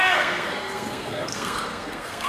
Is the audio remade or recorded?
remade